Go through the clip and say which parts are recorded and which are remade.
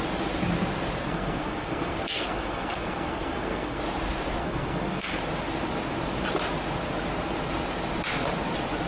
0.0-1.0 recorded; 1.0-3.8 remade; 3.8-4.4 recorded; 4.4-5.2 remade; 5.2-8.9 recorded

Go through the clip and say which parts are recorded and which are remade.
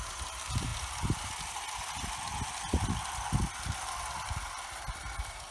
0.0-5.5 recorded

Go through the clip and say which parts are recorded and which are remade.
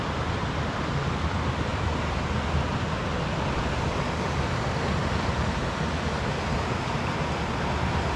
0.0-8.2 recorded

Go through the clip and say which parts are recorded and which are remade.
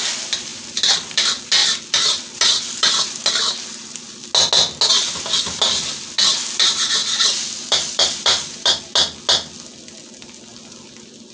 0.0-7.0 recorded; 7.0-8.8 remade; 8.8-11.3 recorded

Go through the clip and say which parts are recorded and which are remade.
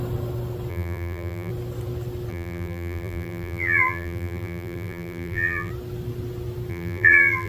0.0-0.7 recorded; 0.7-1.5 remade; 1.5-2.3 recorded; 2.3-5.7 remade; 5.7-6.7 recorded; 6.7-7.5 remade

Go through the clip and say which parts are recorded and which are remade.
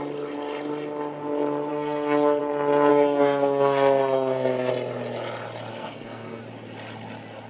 0.0-1.7 recorded; 1.7-2.4 remade; 2.4-2.9 recorded; 2.9-4.7 remade; 4.7-5.7 recorded; 5.7-6.4 remade; 6.4-7.5 recorded